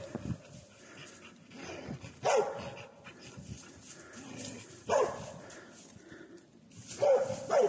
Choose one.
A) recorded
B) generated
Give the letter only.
A